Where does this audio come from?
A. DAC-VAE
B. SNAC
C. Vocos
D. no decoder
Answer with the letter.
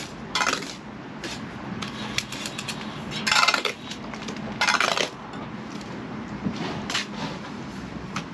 D